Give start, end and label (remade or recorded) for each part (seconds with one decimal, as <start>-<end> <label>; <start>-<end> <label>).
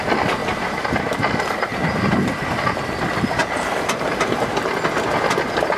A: 0.0-0.4 recorded; 0.4-1.0 remade; 1.0-3.4 recorded; 3.4-4.5 remade; 4.5-5.8 recorded